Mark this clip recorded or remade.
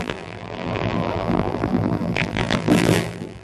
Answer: remade